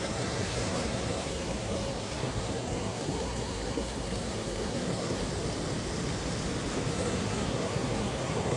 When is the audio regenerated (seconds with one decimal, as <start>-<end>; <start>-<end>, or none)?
0.0-5.2; 6.9-8.6